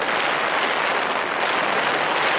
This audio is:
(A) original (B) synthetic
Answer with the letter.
A